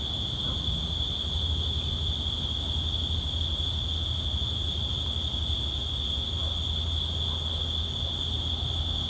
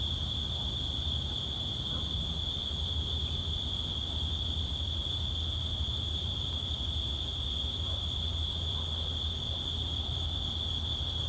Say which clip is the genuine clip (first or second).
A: first